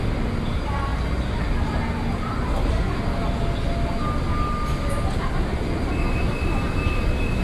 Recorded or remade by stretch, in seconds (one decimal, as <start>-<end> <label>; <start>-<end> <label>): 0.0-7.4 recorded